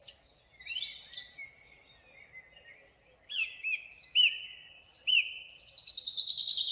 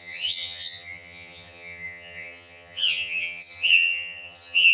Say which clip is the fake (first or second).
second